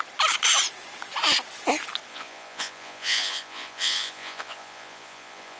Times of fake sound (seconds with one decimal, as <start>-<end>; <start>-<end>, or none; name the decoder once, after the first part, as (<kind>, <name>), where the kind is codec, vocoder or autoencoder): 2.1-5.6 (vocoder, Vocos)